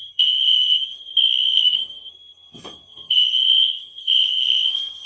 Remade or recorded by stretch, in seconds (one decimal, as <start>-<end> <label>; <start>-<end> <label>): 0.0-5.1 remade